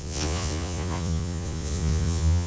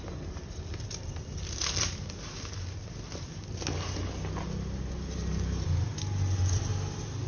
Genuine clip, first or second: second